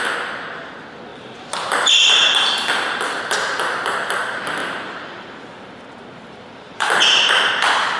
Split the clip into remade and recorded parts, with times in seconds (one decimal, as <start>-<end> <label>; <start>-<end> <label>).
0.0-1.1 recorded; 1.1-2.2 remade; 2.2-4.6 recorded; 4.6-7.5 remade; 7.5-8.0 recorded